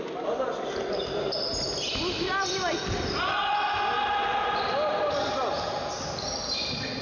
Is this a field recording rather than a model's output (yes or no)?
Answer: yes